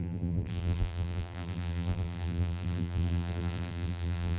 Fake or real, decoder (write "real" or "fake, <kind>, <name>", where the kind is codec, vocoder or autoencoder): fake, vocoder, BigVGAN v2